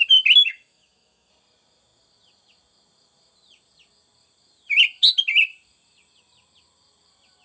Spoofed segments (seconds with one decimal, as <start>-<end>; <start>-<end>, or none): 0.4-1.3